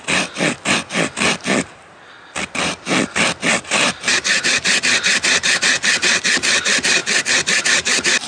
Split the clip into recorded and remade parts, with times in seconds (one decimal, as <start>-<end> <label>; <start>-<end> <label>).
0.0-8.3 recorded